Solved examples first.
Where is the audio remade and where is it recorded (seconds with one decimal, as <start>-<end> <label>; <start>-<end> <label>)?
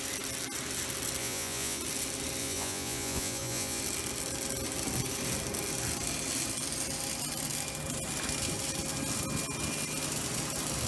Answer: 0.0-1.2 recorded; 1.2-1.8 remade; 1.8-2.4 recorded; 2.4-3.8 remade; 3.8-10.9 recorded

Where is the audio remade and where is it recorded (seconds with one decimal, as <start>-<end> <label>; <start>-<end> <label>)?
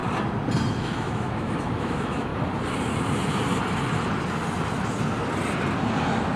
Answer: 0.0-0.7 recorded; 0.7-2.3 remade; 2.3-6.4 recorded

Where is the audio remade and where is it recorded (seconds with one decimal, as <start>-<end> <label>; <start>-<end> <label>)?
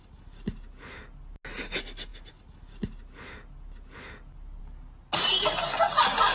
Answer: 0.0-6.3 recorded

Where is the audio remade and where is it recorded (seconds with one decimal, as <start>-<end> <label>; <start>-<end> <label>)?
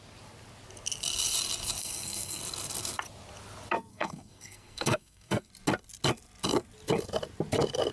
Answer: 0.0-1.8 recorded; 1.8-2.4 remade; 2.4-3.9 recorded; 3.9-5.5 remade; 5.5-7.9 recorded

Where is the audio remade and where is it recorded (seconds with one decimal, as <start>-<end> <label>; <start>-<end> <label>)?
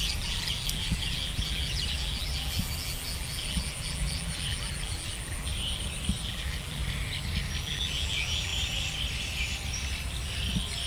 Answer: 0.0-5.5 remade; 5.5-6.2 recorded; 6.2-6.8 remade; 6.8-7.6 recorded; 7.6-8.5 remade; 8.5-10.9 recorded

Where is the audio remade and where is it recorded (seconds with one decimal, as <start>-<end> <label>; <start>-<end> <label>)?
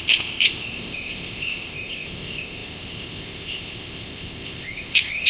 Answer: 0.0-5.3 remade